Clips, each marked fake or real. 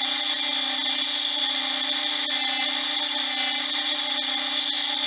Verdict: real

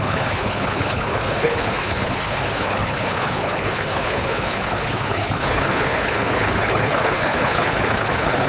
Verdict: fake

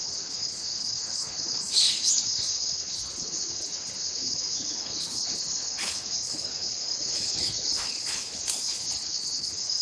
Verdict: fake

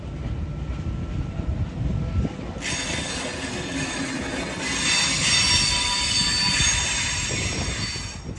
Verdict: real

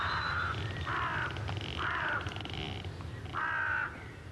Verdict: real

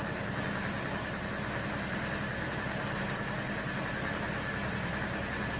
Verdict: real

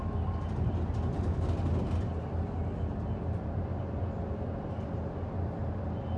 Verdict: real